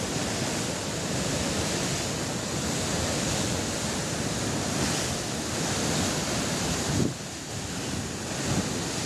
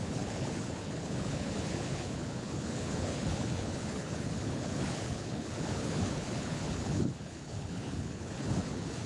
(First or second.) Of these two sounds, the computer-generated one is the second